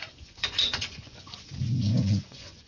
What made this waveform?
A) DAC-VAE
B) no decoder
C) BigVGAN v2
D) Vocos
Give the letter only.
D